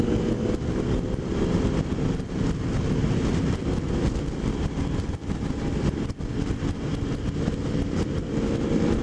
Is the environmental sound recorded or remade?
recorded